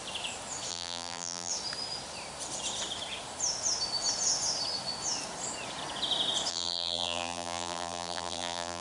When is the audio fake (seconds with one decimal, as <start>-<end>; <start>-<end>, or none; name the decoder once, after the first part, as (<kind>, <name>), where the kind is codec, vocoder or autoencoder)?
0.7-1.5 (vocoder, BigVGAN v2); 6.5-8.8